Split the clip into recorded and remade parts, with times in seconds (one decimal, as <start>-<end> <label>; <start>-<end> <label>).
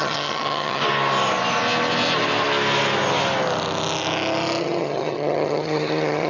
0.0-0.8 remade; 0.8-4.6 recorded; 4.6-6.3 remade